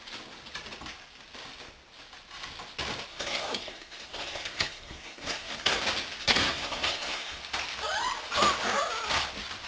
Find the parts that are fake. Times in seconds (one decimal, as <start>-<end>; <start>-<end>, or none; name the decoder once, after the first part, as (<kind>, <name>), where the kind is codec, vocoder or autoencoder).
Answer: 3.1-5.8 (codec, SNAC); 6.2-7.4